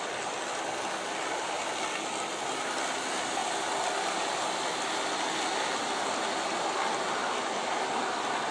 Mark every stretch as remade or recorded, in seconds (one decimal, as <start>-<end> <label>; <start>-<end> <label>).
0.0-8.5 recorded